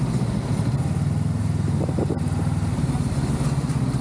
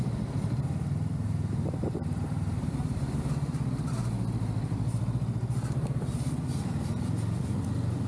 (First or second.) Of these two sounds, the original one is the first